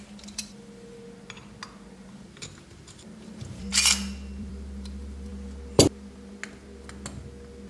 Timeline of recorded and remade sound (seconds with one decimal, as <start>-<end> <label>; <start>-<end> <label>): 0.0-1.0 remade; 1.0-2.7 recorded; 2.7-3.7 remade; 3.7-4.4 recorded; 4.4-5.3 remade; 5.3-7.7 recorded